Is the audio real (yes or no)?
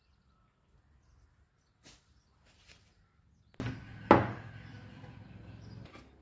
yes